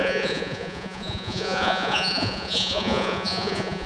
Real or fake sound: fake